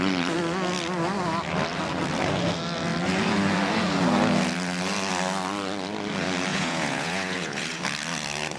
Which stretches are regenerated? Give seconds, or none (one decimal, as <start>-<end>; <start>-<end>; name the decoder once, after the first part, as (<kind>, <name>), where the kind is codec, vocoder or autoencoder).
6.5-7.8 (vocoder, Vocos)